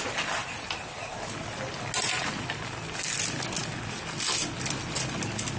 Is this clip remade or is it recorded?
recorded